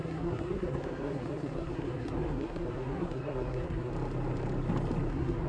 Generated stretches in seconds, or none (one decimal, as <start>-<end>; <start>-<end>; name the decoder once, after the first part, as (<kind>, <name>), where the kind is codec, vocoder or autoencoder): 0.0-3.9 (codec, SNAC); 5.1-5.5